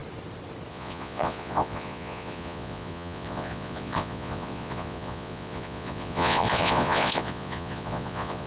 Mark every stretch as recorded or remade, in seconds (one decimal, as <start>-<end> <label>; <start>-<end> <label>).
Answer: 0.0-0.7 recorded; 0.7-8.5 remade